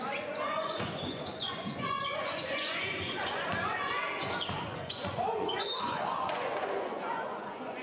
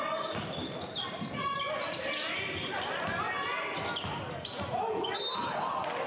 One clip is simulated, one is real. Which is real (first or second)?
second